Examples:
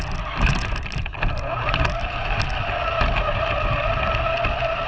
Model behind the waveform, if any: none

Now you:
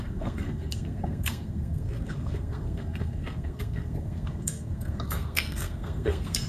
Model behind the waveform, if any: codec, SNAC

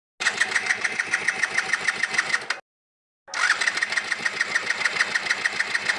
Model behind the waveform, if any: none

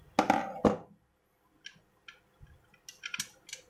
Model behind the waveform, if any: none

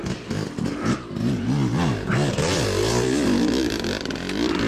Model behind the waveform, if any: none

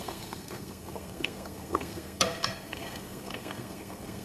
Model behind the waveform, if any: codec, SNAC